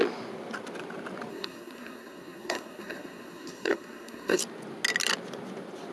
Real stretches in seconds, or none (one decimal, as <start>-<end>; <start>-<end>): 0.0-1.3; 4.4-5.9